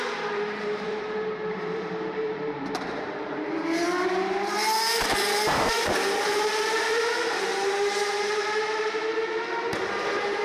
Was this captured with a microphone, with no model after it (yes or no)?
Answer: no